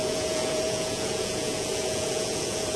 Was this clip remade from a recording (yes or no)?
yes